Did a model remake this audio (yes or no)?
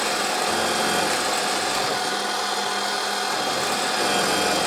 no